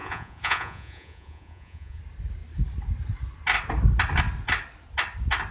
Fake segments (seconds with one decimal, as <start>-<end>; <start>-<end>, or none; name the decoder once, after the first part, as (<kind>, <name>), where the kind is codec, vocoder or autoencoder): 0.0-2.0 (vocoder, Vocos)